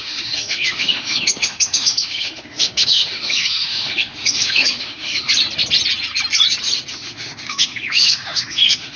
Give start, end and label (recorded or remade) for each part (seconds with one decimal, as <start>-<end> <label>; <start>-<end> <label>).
0.0-5.3 remade; 5.3-6.9 recorded; 6.9-9.0 remade